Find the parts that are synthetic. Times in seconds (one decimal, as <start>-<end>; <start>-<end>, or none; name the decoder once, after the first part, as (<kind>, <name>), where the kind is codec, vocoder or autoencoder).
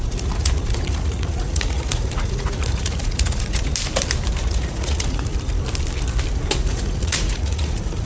0.0-3.7 (vocoder, Vocos); 4.4-5.3; 6.6-8.1